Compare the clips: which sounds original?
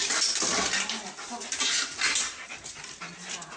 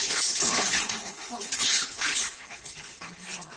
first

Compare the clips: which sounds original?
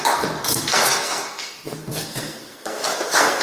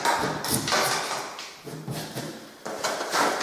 second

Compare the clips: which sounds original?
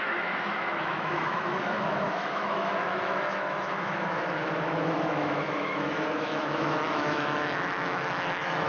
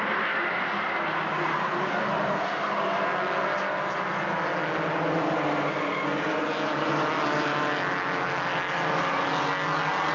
second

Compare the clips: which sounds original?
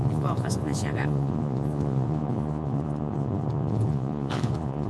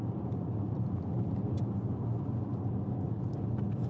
second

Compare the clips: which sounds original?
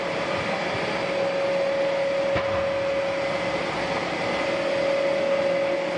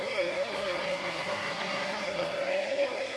first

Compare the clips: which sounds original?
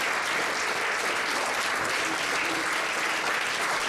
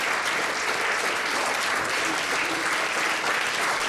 first